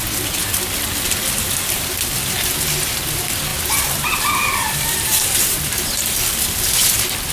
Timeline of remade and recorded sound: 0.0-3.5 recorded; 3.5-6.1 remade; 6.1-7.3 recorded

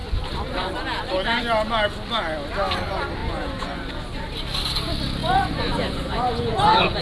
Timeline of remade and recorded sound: 0.0-3.2 recorded; 3.2-3.9 remade; 3.9-5.2 recorded; 5.2-7.0 remade

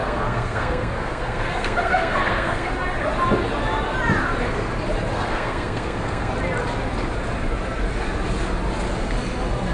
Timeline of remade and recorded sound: 0.0-2.7 remade; 2.7-5.1 recorded; 5.1-6.3 remade; 6.3-9.7 recorded

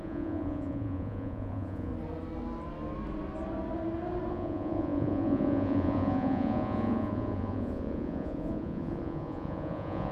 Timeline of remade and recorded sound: 0.0-1.9 remade; 1.9-4.3 recorded; 4.3-10.1 remade

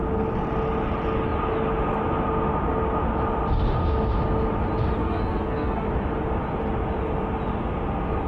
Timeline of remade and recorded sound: 0.0-5.0 recorded; 5.0-5.9 remade; 5.9-8.3 recorded